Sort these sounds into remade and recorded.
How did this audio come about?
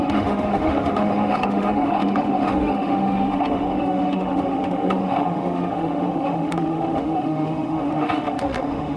remade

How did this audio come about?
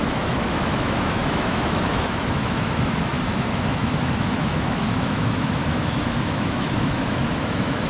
remade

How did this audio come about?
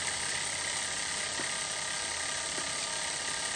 recorded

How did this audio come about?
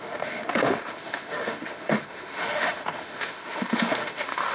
remade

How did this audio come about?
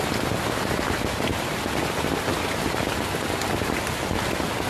recorded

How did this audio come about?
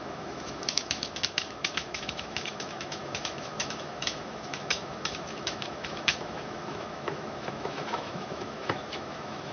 remade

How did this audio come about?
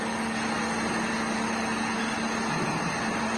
recorded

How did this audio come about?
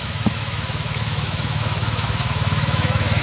remade